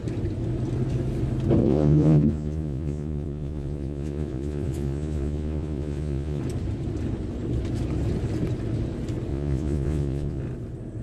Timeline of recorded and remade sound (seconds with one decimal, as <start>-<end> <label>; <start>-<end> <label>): 0.0-1.6 recorded; 1.6-6.4 remade; 6.4-9.3 recorded; 9.3-10.4 remade; 10.4-11.0 recorded